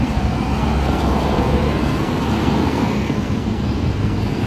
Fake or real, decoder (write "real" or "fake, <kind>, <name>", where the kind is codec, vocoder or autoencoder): fake, codec, SNAC